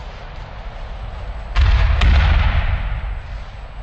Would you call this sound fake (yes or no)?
no